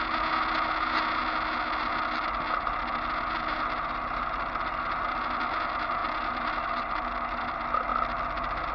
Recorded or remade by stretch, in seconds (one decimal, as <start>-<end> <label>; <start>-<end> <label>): 0.0-8.7 recorded